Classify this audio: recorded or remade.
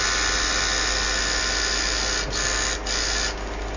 recorded